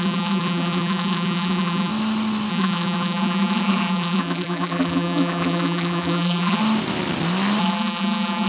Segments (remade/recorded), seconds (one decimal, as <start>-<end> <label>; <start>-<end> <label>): 0.0-1.9 remade; 1.9-2.5 recorded; 2.5-6.6 remade; 6.6-7.6 recorded; 7.6-8.5 remade